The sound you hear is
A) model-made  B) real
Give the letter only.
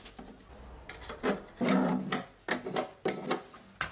B